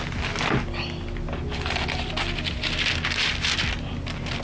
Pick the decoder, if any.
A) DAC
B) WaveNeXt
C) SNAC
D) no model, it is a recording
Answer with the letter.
D